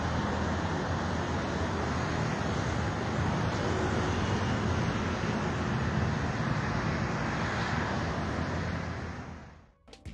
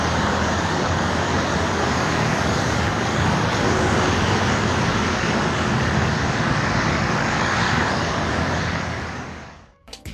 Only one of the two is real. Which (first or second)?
first